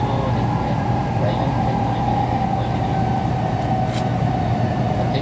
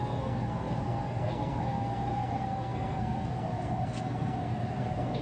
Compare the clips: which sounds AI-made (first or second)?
second